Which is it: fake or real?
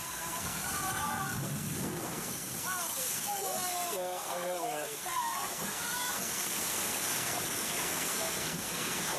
fake